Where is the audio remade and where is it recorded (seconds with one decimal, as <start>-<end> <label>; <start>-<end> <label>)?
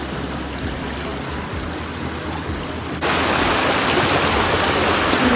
0.0-5.4 recorded